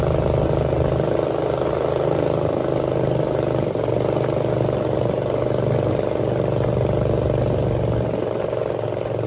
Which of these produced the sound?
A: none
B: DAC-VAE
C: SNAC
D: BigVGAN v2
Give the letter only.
A